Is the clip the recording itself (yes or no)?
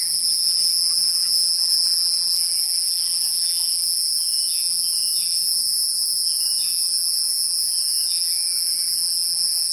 no